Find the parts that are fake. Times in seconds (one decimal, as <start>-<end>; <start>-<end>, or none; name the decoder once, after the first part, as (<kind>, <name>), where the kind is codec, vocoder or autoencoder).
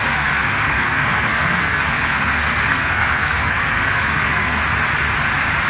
0.0-4.6 (codec, SNAC)